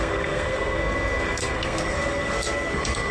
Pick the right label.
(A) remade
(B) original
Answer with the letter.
A